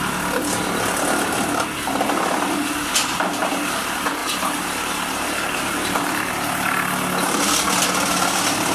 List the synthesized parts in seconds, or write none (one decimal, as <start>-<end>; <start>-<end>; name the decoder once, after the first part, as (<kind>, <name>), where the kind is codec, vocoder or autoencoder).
3.0-3.5 (vocoder, BigVGAN v2); 4.2-6.3